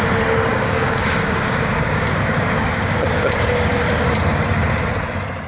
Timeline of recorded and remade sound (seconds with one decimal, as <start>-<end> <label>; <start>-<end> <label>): 0.0-0.5 recorded; 0.5-3.8 remade; 3.8-5.5 recorded